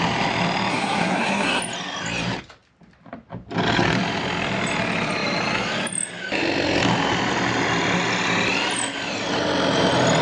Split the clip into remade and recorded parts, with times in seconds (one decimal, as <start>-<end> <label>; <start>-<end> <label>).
0.0-0.7 recorded; 0.7-1.6 remade; 1.6-10.2 recorded